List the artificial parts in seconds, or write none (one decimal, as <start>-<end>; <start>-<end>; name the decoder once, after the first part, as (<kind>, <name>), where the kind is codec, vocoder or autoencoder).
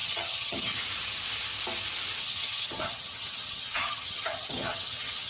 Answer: 0.0-0.8 (vocoder, HiFi-GAN); 2.2-5.3